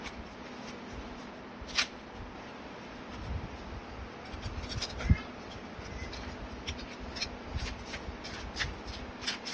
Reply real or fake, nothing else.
real